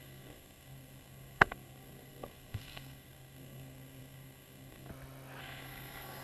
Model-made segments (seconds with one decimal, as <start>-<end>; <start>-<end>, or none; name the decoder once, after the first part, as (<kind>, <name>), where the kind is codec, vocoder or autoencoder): 0.0-4.9 (codec, SNAC); 5.4-6.2